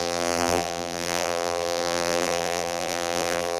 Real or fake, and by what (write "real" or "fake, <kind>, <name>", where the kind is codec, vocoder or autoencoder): fake, vocoder, BigVGAN v2